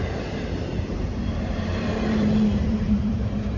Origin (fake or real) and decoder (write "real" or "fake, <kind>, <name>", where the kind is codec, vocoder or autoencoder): fake, vocoder, BigVGAN v2